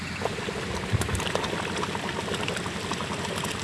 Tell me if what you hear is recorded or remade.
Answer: recorded